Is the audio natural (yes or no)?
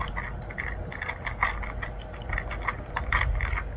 yes